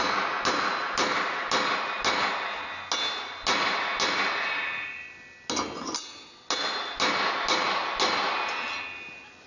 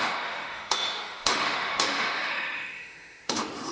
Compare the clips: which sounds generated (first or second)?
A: second